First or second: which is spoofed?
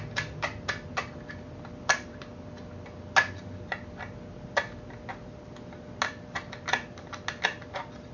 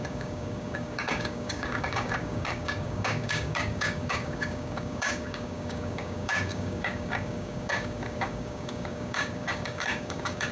second